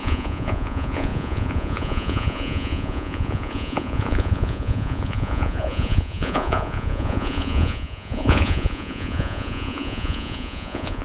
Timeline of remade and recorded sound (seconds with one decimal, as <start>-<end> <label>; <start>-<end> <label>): 0.0-11.0 remade